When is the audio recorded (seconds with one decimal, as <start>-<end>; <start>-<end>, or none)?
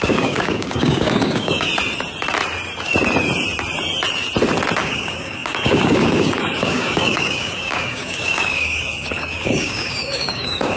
1.7-4.8